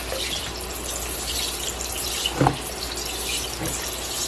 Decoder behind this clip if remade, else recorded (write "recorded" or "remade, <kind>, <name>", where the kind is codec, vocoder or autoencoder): recorded